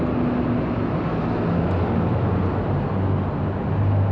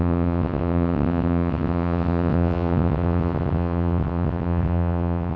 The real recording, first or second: first